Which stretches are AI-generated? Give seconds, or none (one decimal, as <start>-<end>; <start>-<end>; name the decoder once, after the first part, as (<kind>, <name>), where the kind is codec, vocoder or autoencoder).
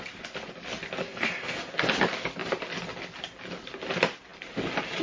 1.0-1.7 (codec, SNAC)